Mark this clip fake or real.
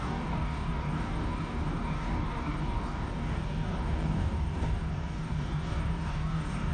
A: fake